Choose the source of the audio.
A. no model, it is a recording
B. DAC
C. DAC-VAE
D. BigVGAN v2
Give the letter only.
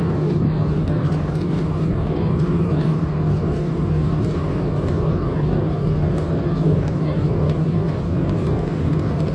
B